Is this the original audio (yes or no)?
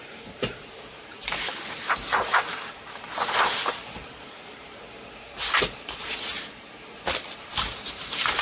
no